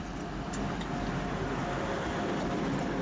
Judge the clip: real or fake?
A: real